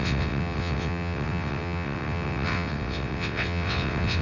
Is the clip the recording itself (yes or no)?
no